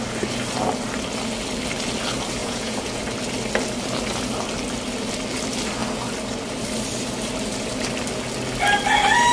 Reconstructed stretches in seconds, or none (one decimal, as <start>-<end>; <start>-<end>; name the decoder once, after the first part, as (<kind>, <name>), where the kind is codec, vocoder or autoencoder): 2.4-3.0 (vocoder, Vocos)